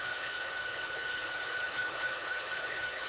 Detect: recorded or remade remade